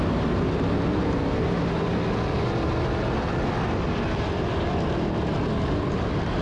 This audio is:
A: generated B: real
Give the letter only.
B